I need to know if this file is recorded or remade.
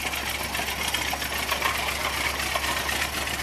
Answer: recorded